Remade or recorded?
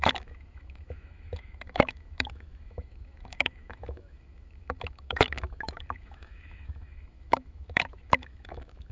remade